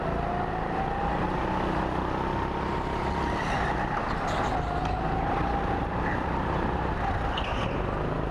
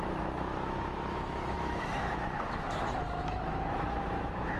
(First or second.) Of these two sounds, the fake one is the second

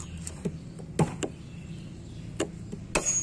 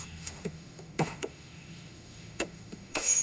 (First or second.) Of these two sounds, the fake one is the second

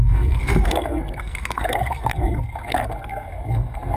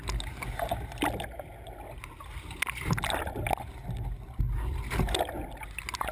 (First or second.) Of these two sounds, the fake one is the first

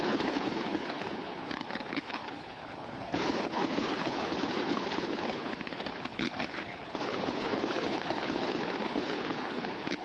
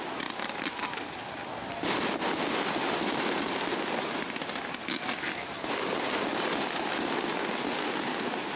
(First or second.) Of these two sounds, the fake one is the first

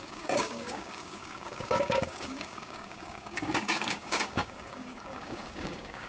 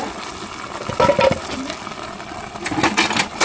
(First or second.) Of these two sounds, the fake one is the first